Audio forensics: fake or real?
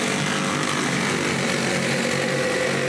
real